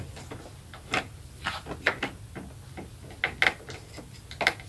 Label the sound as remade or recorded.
recorded